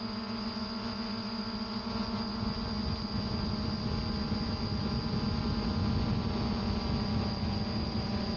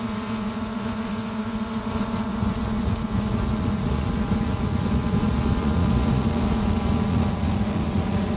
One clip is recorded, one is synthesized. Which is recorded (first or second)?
first